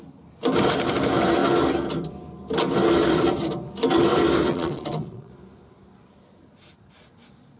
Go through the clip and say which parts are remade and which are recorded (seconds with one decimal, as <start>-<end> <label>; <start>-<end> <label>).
0.0-4.5 recorded; 4.5-5.3 remade; 5.3-7.6 recorded